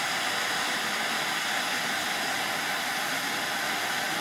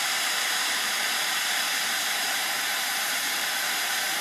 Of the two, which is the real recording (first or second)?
first